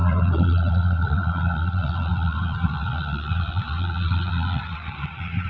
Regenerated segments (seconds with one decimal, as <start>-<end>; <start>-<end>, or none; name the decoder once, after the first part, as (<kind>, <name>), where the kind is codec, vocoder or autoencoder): 0.0-5.5 (vocoder, Vocos)